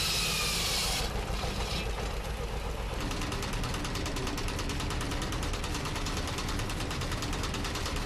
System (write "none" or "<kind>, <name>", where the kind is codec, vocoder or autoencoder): none